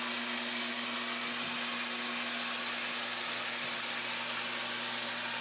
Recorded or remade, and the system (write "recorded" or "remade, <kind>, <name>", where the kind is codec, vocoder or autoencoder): recorded